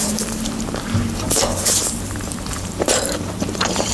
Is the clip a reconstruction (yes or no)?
yes